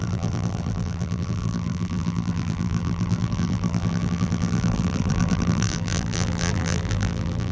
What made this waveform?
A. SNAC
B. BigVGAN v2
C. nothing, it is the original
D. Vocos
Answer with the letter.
B